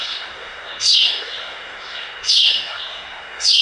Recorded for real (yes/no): no